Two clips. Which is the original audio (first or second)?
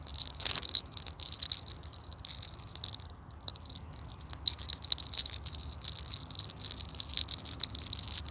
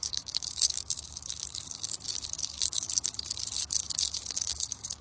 first